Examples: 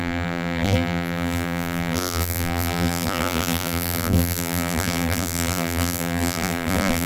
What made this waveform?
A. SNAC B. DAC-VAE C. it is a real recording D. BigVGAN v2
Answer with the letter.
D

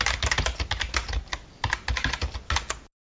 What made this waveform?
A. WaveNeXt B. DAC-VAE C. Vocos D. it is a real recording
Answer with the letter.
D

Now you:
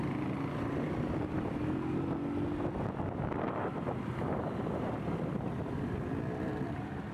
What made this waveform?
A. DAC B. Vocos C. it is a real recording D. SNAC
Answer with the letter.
C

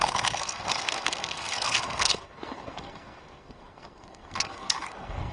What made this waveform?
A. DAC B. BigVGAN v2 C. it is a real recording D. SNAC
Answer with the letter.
D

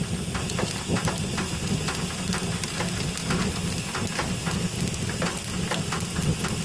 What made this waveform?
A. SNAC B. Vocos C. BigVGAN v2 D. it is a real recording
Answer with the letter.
D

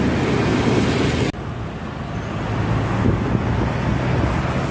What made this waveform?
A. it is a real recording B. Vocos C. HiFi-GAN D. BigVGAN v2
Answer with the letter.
A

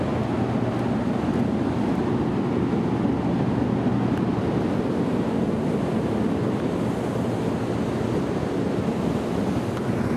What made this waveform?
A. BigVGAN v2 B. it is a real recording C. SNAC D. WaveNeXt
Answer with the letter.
B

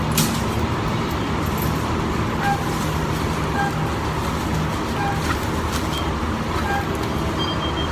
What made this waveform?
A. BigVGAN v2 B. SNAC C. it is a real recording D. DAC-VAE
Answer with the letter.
C